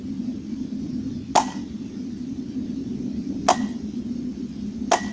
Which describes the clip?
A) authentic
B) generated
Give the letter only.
A